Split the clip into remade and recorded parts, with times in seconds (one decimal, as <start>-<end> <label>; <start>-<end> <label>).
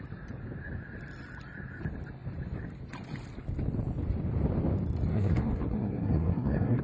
0.0-5.1 recorded; 5.1-6.8 remade